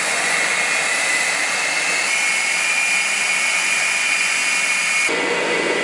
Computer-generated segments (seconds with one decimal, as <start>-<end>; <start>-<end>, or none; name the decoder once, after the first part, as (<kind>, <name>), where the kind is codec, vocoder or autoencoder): 0.0-0.5 (vocoder, Vocos); 3.5-4.4; 5.1-5.8